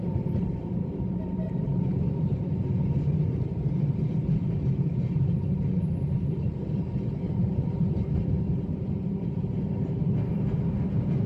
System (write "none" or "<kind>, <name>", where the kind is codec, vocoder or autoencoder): none